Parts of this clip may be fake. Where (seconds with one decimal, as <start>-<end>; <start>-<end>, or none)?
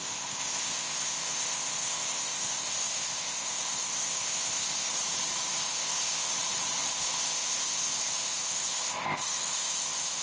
0.0-5.0; 5.6-6.3; 6.9-10.2